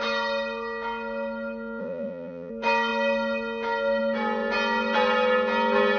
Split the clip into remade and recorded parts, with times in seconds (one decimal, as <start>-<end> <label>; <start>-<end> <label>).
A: 0.0-1.8 recorded; 1.8-2.5 remade; 2.5-6.0 recorded